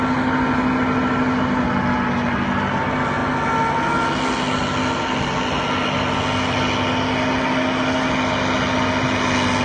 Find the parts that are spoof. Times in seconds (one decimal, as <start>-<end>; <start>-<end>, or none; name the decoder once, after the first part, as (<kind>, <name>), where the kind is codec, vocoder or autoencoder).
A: none